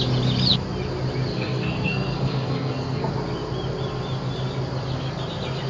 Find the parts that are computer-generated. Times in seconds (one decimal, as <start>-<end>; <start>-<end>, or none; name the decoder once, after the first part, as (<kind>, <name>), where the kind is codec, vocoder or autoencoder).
1.3-3.1 (codec, SNAC)